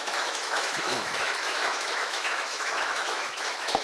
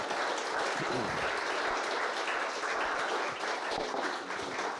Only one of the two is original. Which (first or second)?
second